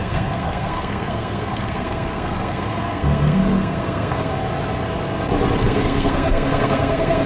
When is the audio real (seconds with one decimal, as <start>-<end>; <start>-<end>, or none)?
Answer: 4.3-5.6